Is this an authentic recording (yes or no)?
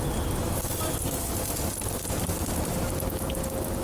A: yes